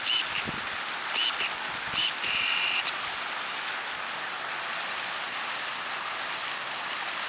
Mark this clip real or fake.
real